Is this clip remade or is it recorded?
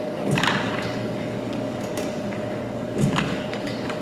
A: remade